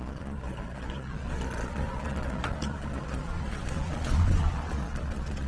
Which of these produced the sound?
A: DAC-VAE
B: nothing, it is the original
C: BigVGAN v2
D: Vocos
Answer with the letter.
D